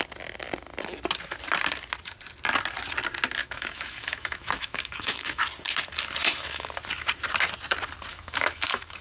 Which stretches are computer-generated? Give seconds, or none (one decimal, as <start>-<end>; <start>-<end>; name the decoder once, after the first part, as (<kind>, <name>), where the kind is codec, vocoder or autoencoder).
3.4-5.4 (autoencoder, DAC-VAE); 6.2-6.7; 8.1-9.0